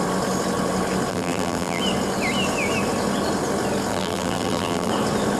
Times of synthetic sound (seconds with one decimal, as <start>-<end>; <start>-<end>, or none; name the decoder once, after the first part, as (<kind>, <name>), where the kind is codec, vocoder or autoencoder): 1.1-1.8 (vocoder, BigVGAN v2); 3.9-4.9